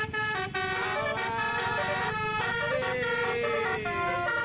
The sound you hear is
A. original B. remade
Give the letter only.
A